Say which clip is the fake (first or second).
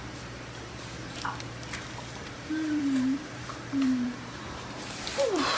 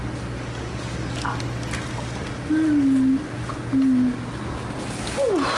first